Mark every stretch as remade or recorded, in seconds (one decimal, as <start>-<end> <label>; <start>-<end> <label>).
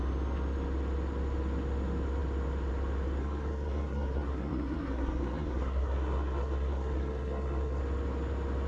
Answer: 0.0-3.2 recorded; 3.2-7.8 remade; 7.8-8.7 recorded